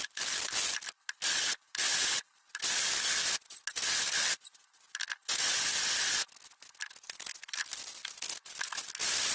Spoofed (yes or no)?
no